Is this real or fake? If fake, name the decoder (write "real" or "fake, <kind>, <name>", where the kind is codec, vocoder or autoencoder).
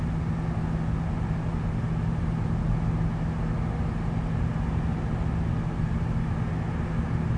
real